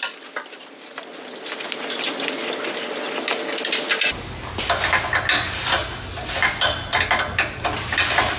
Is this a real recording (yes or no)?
yes